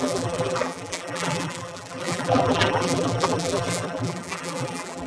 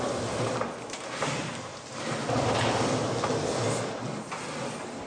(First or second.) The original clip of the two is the second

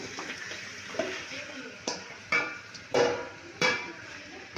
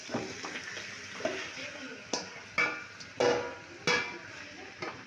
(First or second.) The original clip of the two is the second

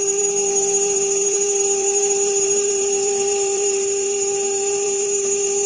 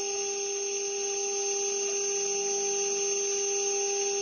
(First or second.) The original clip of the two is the second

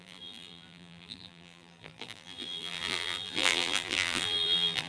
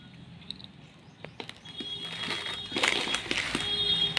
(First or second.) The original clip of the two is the second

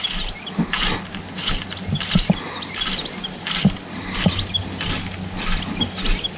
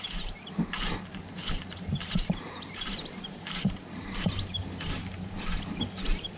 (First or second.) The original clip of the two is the first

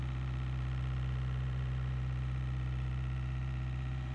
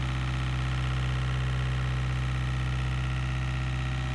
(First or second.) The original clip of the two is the second